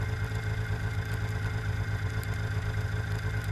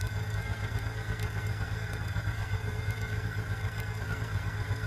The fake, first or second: second